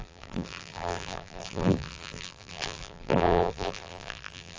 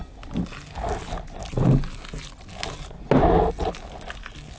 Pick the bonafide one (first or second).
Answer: second